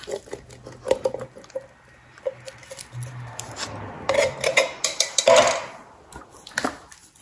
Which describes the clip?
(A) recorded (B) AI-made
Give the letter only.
A